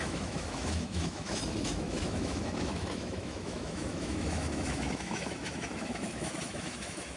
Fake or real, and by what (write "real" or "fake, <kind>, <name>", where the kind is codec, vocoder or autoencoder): fake, autoencoder, DAC-VAE